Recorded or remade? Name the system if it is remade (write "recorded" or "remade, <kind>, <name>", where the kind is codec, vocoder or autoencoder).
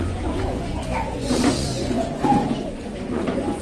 remade, vocoder, Vocos